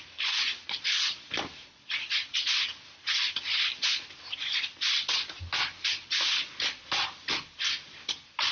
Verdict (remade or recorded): recorded